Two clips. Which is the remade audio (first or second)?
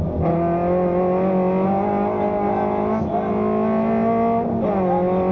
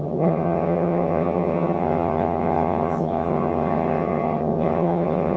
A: second